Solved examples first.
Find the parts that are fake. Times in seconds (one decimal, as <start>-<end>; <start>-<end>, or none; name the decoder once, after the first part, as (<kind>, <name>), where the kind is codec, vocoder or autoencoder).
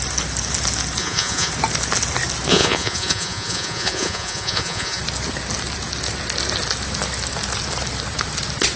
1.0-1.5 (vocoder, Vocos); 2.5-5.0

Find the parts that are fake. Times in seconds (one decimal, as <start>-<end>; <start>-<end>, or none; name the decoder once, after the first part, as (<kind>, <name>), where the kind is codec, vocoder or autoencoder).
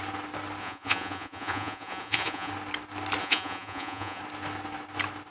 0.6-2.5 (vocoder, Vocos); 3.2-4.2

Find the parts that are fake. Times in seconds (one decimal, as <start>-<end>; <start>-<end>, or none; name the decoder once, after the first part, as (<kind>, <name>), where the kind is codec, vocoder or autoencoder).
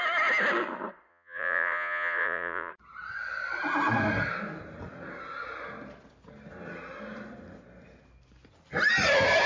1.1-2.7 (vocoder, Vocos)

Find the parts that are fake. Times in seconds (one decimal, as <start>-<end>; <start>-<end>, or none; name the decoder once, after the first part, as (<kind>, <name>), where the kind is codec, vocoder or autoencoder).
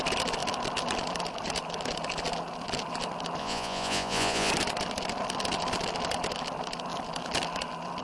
3.4-4.5 (vocoder, Vocos)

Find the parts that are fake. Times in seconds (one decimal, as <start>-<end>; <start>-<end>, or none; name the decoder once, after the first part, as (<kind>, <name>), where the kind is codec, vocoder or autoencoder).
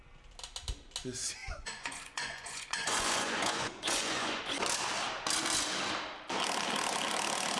1.4-4.4 (vocoder, Vocos)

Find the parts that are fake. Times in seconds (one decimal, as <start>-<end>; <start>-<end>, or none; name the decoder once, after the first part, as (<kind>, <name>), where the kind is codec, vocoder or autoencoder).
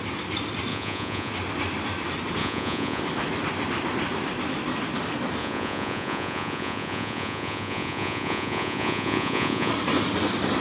0.7-1.3 (vocoder, Vocos); 2.4-3.0; 5.4-9.7